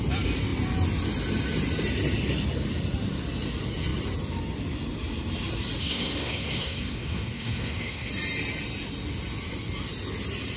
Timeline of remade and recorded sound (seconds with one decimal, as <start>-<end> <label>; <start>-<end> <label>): 0.0-5.8 recorded; 5.8-8.1 remade; 8.1-10.6 recorded